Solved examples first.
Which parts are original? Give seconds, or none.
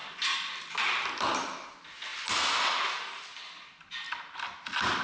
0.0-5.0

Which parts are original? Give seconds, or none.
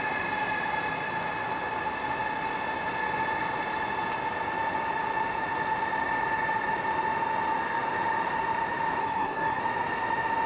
0.0-9.0; 9.6-10.5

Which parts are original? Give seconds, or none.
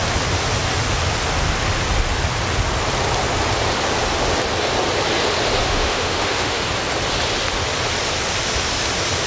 0.0-5.6; 6.6-9.3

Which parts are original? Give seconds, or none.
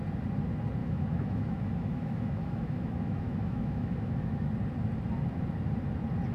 0.0-0.8; 4.5-6.3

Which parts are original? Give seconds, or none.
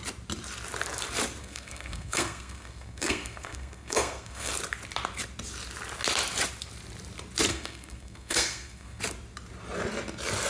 0.0-1.4; 4.5-7.5; 9.0-10.5